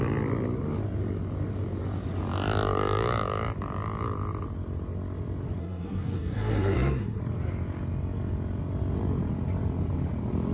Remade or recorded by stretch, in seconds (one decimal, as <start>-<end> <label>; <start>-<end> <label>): 0.0-5.6 recorded; 5.6-7.2 remade; 7.2-10.5 recorded